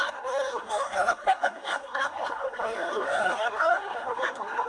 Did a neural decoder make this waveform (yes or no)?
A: yes